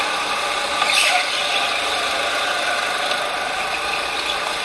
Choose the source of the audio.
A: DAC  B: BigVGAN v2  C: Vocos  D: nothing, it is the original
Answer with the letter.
D